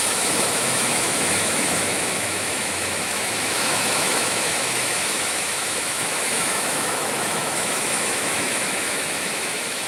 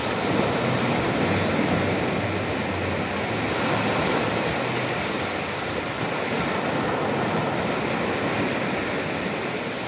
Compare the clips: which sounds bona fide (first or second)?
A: second